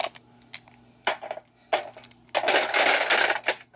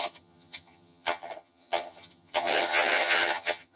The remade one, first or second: second